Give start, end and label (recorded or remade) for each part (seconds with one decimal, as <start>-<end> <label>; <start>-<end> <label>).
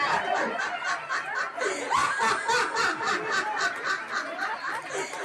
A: 0.0-5.2 recorded